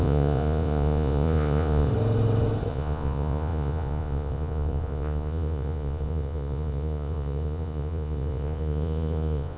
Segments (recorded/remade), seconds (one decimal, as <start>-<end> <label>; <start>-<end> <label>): 0.0-1.9 remade; 1.9-2.7 recorded; 2.7-9.6 remade